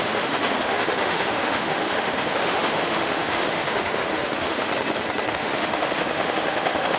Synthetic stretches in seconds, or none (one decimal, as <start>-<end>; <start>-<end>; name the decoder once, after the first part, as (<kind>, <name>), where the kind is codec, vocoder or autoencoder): 0.0-4.7 (autoencoder, DAC-VAE); 5.3-7.0

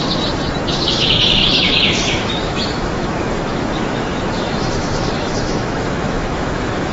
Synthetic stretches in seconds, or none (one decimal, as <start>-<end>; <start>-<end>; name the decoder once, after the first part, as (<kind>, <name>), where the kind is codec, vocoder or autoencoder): 0.9-6.9 (autoencoder, DAC-VAE)

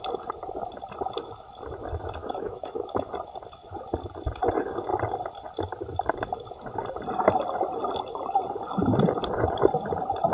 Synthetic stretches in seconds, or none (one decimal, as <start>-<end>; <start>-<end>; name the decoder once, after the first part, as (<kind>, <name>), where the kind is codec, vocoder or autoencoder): 2.2-3.1 (autoencoder, DAC-VAE)

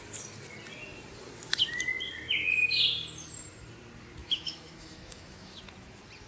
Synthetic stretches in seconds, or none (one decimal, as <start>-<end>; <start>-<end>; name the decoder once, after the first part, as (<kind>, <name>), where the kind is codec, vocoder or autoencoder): 4.2-5.6 (autoencoder, DAC-VAE)

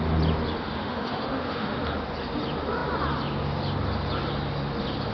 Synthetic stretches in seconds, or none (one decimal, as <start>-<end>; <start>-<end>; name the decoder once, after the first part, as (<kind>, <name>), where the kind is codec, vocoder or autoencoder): 0.8-1.8 (autoencoder, DAC-VAE)

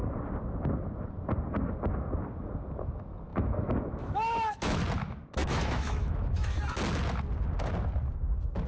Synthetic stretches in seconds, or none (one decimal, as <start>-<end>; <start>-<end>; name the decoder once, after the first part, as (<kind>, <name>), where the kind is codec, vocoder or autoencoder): 3.3-4.8 (autoencoder, DAC-VAE); 5.4-6.6

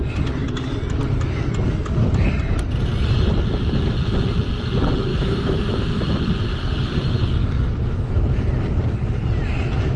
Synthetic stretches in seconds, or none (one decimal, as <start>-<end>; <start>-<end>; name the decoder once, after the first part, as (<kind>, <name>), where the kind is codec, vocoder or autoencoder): 5.1-6.1 (autoencoder, DAC-VAE)

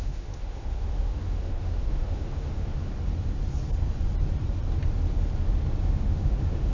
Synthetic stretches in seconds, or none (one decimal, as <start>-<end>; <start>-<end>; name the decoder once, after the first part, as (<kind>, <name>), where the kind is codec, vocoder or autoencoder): 0.0-2.9 (autoencoder, DAC-VAE); 5.8-6.7